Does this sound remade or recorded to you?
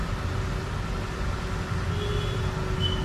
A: recorded